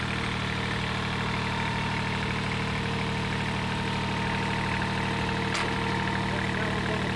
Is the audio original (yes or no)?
yes